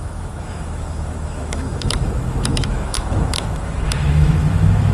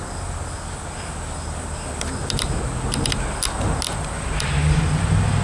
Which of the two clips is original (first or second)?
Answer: second